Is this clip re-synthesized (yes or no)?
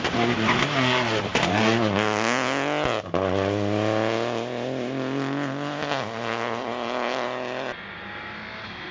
no